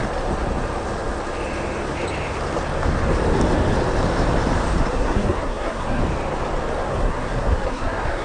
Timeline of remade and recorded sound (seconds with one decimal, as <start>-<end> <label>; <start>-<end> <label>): 0.0-4.9 recorded; 4.9-6.0 remade; 6.0-6.9 recorded; 6.9-8.2 remade